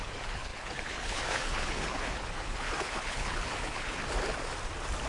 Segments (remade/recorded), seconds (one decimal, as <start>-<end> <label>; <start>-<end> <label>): 0.0-4.0 remade; 4.0-5.1 recorded